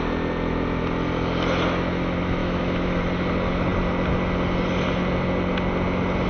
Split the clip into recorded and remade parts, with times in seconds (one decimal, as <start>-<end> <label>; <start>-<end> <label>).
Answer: 0.0-2.4 recorded; 2.4-3.0 remade; 3.0-6.3 recorded